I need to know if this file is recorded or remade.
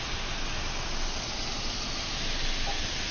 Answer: recorded